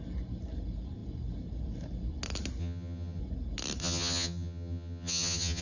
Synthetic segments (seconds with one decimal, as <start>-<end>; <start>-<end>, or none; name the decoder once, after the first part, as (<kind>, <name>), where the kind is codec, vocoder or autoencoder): 2.6-3.2 (vocoder, HiFi-GAN); 3.8-5.6